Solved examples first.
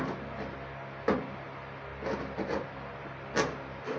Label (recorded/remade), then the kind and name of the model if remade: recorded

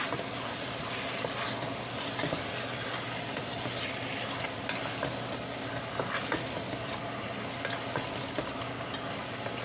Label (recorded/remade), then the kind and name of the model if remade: recorded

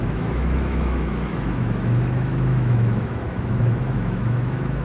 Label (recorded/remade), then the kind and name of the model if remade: remade, autoencoder, DAC-VAE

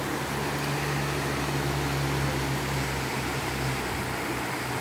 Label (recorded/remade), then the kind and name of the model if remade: recorded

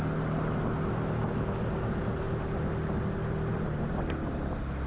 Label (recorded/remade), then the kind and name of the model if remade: recorded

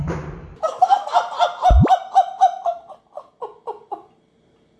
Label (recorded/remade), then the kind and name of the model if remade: recorded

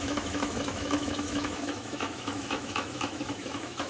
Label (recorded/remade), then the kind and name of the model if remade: remade, autoencoder, DAC-VAE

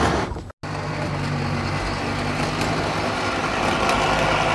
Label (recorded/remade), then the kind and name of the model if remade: recorded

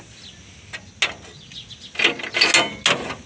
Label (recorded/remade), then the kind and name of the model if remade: recorded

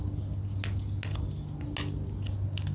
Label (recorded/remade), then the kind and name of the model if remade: recorded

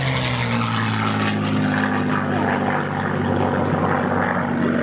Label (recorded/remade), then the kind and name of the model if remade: recorded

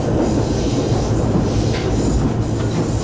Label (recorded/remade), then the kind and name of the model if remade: recorded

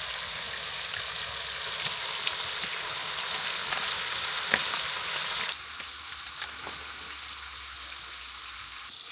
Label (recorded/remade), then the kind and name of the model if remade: recorded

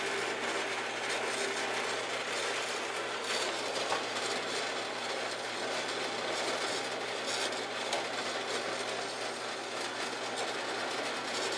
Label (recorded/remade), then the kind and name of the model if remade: recorded